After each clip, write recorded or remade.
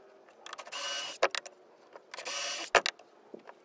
recorded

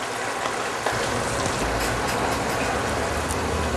recorded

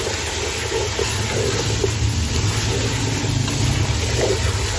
recorded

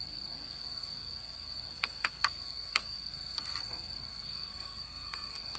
remade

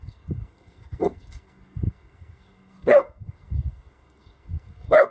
remade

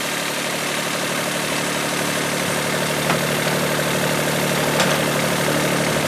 recorded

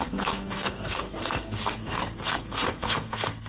remade